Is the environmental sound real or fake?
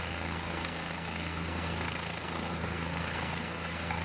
fake